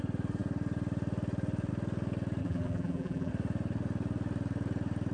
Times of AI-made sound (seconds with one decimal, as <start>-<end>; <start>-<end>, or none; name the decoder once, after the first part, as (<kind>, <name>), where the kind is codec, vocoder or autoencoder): 2.4-3.3 (vocoder, BigVGAN v2)